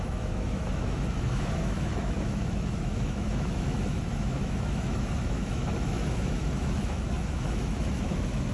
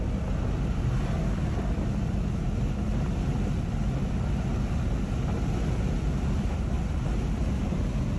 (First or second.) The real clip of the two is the second